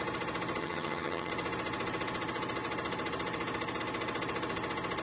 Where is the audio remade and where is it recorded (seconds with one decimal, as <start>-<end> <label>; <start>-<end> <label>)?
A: 0.0-0.6 recorded; 0.6-1.3 remade; 1.3-5.0 recorded